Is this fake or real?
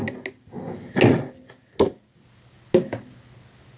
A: real